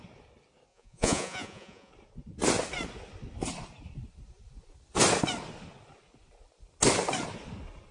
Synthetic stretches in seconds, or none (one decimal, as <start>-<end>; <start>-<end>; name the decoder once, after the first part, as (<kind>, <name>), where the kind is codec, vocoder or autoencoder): 0.7-1.9 (vocoder, Vocos)